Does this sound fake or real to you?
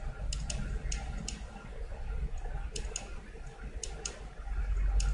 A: real